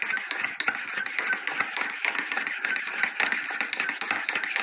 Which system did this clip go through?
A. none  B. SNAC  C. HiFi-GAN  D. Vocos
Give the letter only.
A